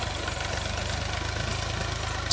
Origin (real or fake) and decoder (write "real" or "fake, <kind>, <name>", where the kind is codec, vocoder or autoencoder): real